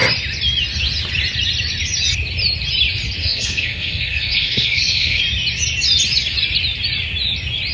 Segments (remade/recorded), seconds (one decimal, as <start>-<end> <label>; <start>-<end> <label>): 0.0-3.2 recorded; 3.2-5.2 remade; 5.2-7.7 recorded